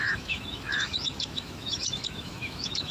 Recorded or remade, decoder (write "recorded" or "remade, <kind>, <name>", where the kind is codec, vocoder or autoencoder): remade, autoencoder, DAC-VAE